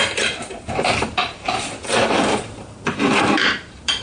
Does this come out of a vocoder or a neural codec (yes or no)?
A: yes